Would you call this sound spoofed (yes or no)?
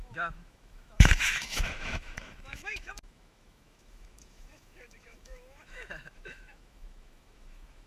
yes